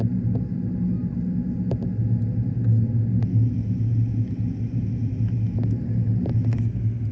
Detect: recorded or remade recorded